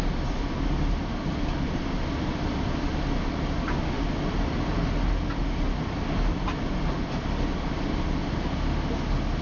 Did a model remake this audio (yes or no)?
no